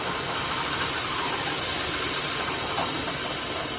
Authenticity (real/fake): fake